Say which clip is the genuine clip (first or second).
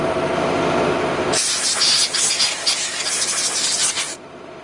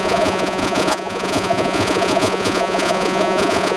first